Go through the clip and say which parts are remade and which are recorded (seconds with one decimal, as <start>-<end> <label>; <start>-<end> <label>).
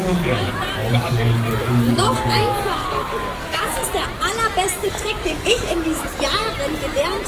0.0-0.5 remade; 0.5-0.9 recorded; 0.9-3.7 remade; 3.7-4.8 recorded; 4.8-6.1 remade; 6.1-7.3 recorded